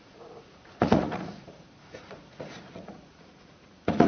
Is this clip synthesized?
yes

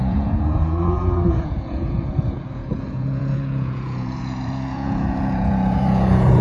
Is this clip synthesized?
yes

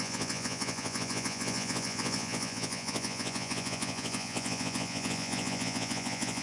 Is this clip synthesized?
yes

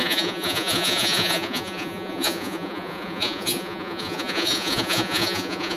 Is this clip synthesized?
yes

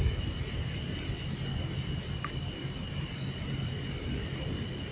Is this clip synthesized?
no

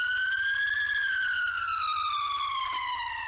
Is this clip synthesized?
no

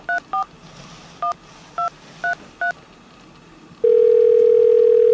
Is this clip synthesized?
no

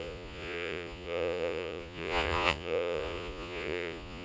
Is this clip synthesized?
yes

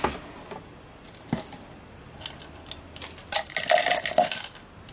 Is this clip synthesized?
no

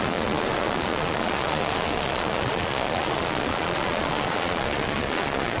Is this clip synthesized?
yes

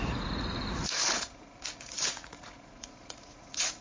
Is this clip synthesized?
yes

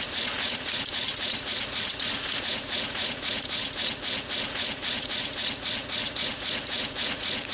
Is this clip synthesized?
yes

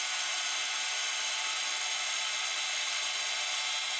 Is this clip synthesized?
no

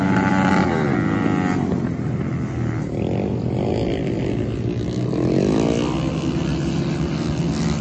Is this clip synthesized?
no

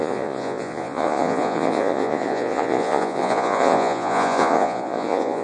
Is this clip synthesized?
yes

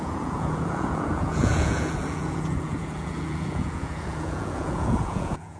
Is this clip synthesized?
yes